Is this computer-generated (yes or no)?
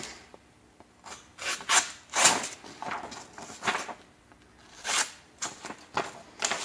no